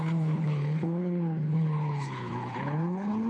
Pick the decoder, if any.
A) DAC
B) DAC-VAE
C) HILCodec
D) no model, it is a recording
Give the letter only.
C